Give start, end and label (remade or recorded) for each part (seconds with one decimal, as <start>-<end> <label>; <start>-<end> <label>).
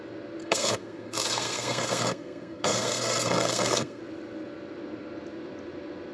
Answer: 0.0-0.4 recorded; 0.4-4.0 remade; 4.0-6.1 recorded